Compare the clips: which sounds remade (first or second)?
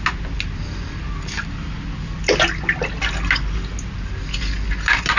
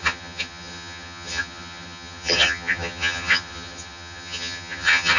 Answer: second